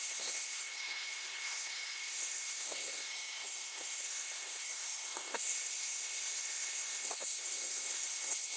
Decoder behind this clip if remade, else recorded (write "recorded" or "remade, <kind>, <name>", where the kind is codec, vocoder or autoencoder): remade, codec, SNAC